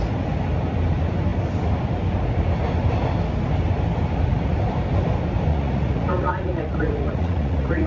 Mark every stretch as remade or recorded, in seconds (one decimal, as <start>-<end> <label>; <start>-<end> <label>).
0.0-5.5 recorded; 5.5-7.9 remade